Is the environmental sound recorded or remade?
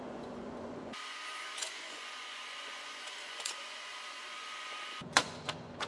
remade